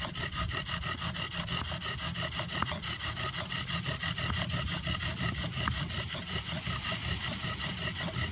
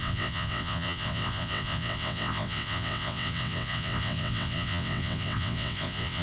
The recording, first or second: first